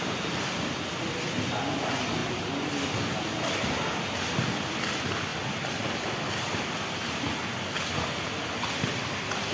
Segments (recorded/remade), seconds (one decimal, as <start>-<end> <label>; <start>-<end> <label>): 0.0-9.5 recorded